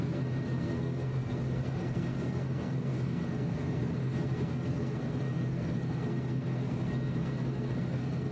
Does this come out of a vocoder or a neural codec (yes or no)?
yes